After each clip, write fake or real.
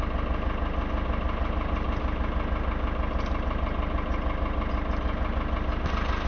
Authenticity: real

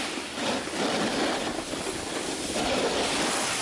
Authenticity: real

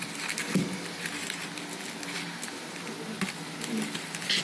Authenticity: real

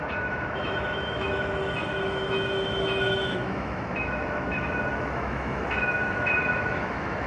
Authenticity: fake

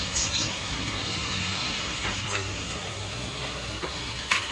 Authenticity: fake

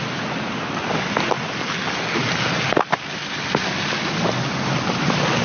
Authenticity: real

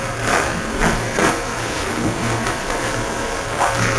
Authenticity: fake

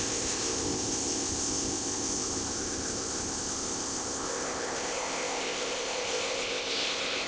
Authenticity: fake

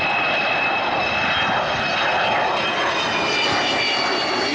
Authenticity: real